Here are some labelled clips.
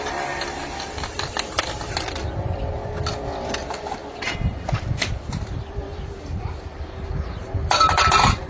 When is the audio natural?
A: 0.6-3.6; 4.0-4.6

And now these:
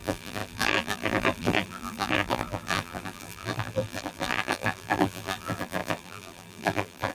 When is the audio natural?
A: none

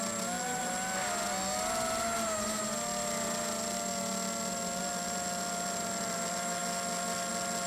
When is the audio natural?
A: 0.0-7.7